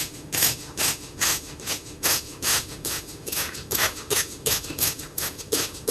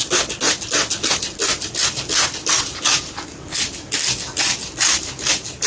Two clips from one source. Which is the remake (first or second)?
first